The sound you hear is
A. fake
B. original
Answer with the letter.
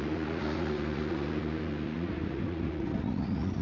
A